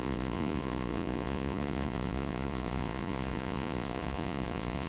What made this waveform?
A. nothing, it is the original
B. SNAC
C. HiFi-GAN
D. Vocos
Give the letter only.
D